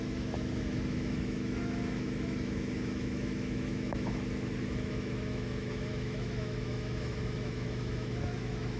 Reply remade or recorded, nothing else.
remade